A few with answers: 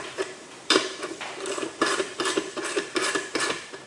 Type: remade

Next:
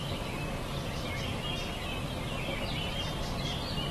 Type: recorded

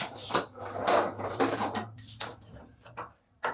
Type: remade